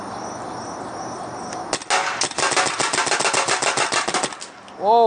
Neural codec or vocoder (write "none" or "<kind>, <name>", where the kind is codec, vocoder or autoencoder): none